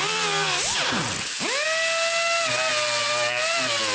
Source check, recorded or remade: recorded